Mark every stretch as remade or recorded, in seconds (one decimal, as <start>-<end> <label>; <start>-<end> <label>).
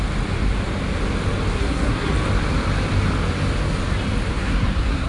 0.0-1.5 recorded; 1.5-2.1 remade; 2.1-4.4 recorded; 4.4-5.1 remade